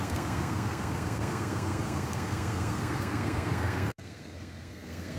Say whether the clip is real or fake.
fake